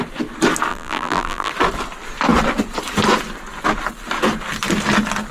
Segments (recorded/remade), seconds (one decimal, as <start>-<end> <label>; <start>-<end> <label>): 0.0-0.7 recorded; 0.7-1.5 remade; 1.5-5.3 recorded